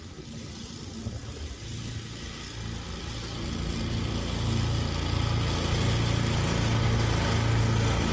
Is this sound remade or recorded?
recorded